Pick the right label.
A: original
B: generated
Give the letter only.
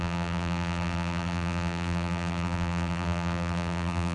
B